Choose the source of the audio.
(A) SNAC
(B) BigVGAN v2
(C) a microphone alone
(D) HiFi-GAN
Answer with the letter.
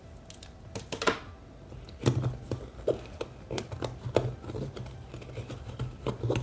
C